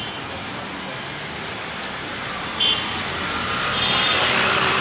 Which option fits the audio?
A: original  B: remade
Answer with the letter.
A